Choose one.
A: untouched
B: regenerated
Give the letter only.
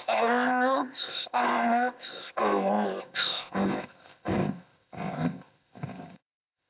B